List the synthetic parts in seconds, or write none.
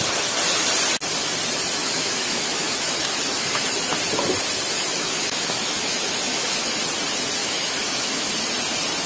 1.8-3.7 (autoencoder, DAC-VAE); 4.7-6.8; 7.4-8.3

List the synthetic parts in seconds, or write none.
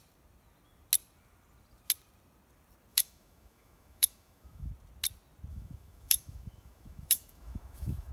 2.9-4.7 (autoencoder, DAC-VAE); 5.5-8.1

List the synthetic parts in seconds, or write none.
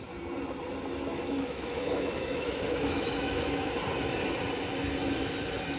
1.1-3.7 (autoencoder, DAC-VAE)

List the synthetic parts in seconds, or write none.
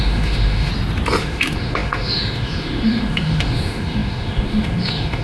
0.0-0.7 (autoencoder, DAC-VAE); 1.2-5.2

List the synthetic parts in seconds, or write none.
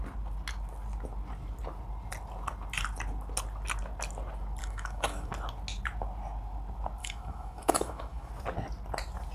4.6-5.3 (autoencoder, DAC-VAE); 7.0-8.3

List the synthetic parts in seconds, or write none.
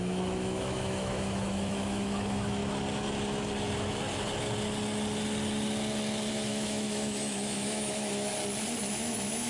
0.0-2.6 (autoencoder, DAC-VAE); 6.3-8.3; 8.9-9.5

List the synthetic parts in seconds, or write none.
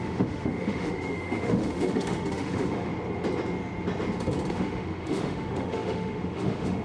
0.0-2.9 (autoencoder, DAC-VAE); 4.5-6.8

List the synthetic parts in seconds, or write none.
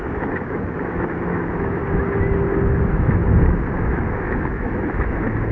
0.0-1.8 (autoencoder, DAC-VAE); 2.8-3.2; 3.8-5.5